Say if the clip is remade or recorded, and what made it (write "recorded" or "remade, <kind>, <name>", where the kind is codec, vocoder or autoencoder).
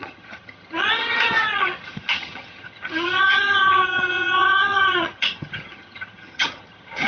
remade, vocoder, HiFi-GAN